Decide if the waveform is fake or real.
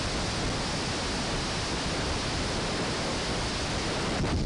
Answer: real